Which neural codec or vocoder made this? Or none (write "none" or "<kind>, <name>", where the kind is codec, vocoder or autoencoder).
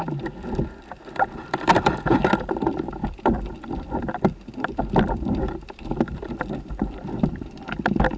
vocoder, BigVGAN v2